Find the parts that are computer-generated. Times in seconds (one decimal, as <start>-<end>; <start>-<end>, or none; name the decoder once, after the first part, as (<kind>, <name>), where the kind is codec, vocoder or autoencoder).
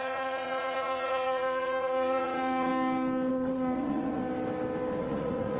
0.0-2.7 (vocoder, Vocos); 3.3-4.2; 5.0-5.6